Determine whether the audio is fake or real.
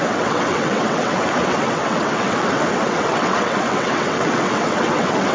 fake